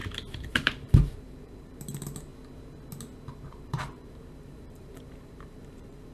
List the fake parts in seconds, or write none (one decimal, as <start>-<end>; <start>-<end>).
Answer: 0.0-2.3; 3.4-6.1